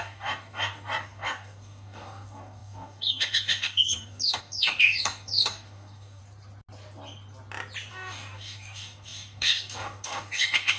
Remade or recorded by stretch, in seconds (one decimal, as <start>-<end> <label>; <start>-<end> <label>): 0.0-6.2 remade; 6.2-7.9 recorded; 7.9-10.8 remade